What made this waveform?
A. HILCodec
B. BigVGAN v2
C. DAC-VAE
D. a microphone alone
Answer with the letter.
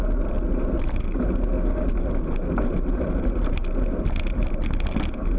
D